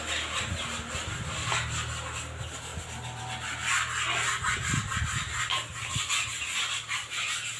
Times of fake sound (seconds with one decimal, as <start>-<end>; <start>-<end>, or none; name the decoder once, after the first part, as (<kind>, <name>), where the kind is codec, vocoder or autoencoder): none